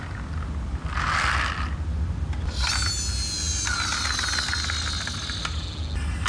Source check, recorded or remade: recorded